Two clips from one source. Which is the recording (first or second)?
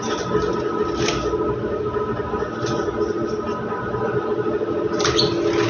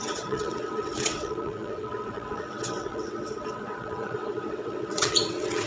first